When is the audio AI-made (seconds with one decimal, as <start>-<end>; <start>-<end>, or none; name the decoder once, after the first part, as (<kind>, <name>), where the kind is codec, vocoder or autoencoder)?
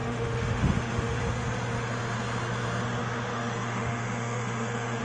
0.0-1.2 (autoencoder, DAC-VAE); 3.0-5.0